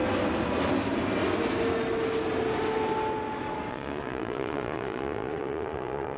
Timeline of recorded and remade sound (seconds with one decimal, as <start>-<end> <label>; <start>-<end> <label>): 0.0-3.7 recorded; 3.7-6.2 remade